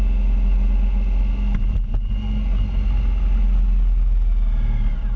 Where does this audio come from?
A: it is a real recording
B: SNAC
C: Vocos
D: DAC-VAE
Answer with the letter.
A